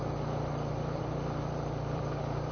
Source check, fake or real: fake